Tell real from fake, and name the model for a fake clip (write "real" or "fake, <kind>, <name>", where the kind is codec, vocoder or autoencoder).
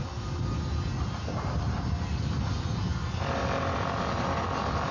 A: real